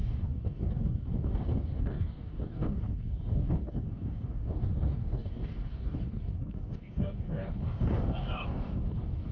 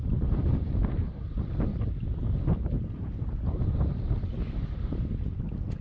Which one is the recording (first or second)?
second